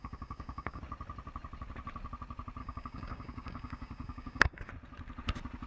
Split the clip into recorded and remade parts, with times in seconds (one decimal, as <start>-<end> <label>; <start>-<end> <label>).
0.0-0.8 remade; 0.8-2.6 recorded; 2.6-4.7 remade; 4.7-5.7 recorded